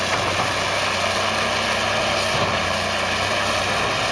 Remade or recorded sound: recorded